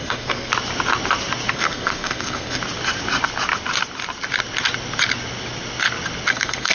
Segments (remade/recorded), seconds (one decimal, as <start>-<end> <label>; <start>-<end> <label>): 0.0-0.5 remade; 0.5-1.5 recorded; 1.5-2.6 remade; 2.6-6.3 recorded; 6.3-6.7 remade